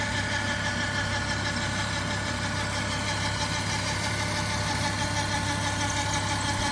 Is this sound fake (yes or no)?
no